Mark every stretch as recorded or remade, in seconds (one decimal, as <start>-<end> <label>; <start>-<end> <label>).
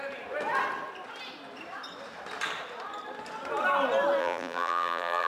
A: 0.0-4.2 recorded; 4.2-5.3 remade